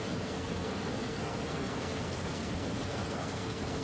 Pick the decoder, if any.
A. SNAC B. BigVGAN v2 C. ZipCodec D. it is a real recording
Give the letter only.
A